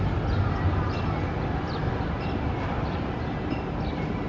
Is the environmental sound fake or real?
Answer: real